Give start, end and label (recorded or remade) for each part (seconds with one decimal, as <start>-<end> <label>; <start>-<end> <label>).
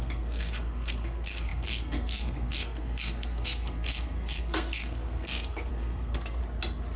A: 0.0-6.4 remade; 6.4-7.0 recorded